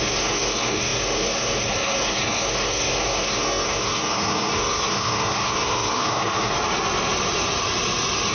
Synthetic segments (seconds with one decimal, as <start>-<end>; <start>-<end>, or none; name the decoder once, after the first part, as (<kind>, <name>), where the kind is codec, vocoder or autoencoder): 0.0-6.5 (codec, SNAC)